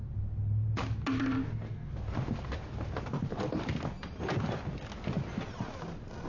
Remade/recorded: recorded